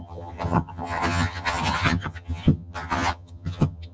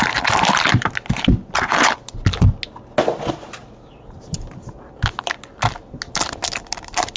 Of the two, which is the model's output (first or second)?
first